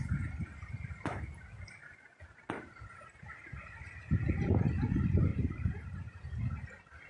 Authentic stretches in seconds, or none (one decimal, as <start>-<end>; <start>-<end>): 0.0-1.8; 2.8-5.3; 6.2-7.1